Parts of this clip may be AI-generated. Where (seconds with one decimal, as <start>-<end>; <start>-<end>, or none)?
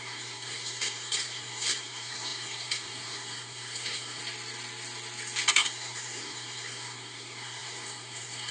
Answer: 0.0-4.2; 5.5-8.5